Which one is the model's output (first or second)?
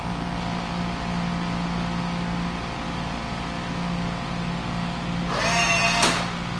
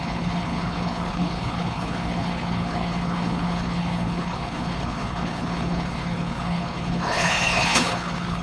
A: second